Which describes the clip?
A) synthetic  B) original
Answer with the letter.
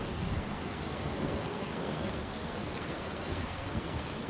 A